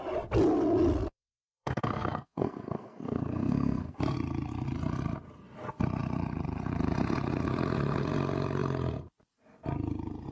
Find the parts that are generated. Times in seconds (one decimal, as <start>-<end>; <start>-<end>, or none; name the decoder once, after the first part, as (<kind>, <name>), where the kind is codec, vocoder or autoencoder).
1.1-4.0 (codec, SNAC)